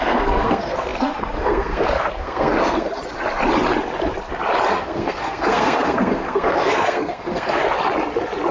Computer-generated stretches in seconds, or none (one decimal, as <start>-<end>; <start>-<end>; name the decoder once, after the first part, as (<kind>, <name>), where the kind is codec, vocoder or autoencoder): 0.0-2.9 (codec, SNAC); 4.7-7.6